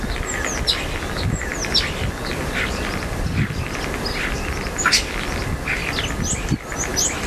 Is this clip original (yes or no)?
yes